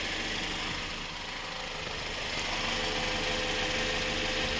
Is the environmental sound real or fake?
real